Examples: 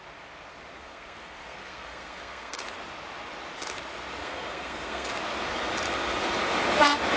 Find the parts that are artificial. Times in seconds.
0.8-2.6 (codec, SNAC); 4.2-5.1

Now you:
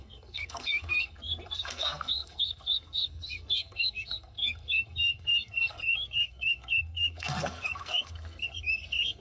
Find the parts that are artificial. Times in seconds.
0.0-9.2 (codec, SNAC)